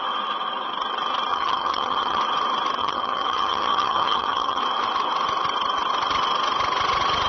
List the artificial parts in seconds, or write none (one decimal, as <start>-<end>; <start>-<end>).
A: 1.3-2.2; 2.8-4.6